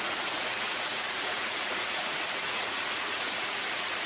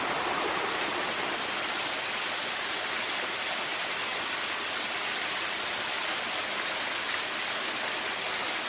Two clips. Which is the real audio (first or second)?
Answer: second